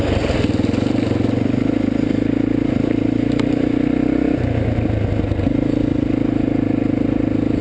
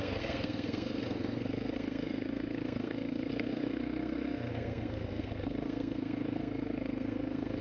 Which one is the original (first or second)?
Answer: first